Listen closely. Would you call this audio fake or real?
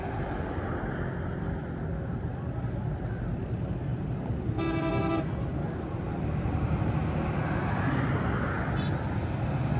real